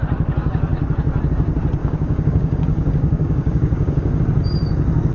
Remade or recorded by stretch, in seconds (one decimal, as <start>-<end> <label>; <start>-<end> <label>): 0.0-1.8 recorded; 1.8-4.2 remade; 4.2-5.1 recorded